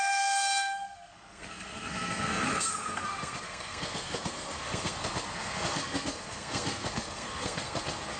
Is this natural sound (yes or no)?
no